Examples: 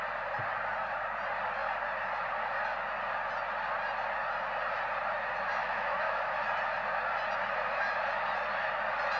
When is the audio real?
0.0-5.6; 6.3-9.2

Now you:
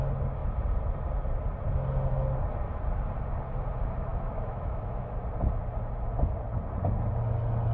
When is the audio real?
0.0-4.1; 5.1-7.7

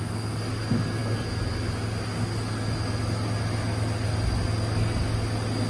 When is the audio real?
0.0-5.7

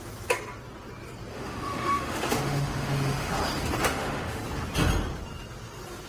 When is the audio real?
0.0-1.3; 3.3-3.9; 4.4-6.1

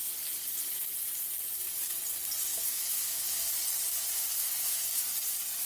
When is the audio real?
0.0-2.5; 3.5-4.4; 5.0-5.7

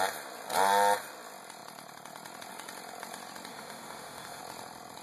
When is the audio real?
0.0-3.5; 4.4-5.0